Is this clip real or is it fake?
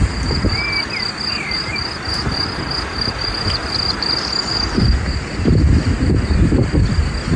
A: real